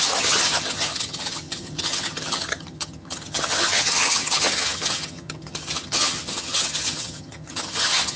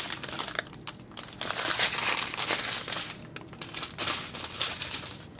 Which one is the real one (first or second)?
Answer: second